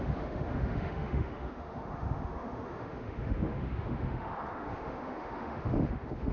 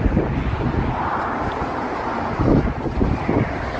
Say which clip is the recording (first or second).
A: second